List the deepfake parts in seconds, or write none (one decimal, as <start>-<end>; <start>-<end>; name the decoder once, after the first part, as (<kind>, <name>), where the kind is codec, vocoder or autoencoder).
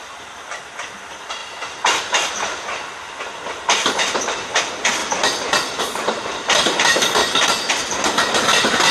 7.2-7.7 (vocoder, BigVGAN v2)